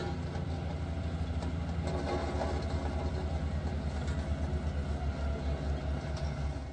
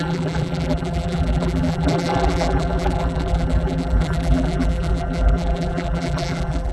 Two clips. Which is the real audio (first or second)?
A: first